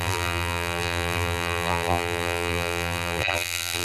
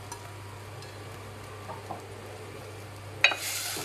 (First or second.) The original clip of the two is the second